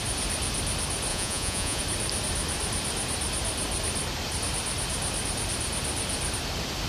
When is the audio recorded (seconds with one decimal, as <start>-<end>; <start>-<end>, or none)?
0.0-1.1; 1.8-6.9